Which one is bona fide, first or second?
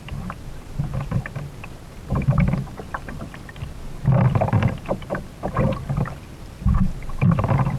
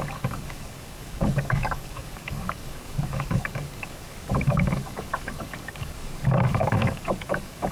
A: first